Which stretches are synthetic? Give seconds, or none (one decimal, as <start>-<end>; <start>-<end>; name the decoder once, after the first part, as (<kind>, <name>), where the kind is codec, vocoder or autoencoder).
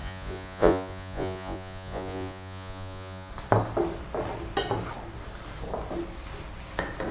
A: 0.0-3.3 (vocoder, Vocos)